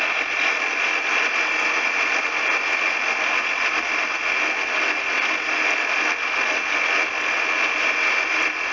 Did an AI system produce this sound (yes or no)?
no